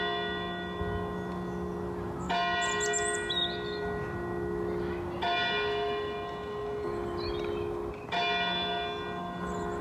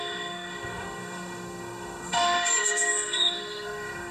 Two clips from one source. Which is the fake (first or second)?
second